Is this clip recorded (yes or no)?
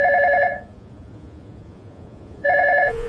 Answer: no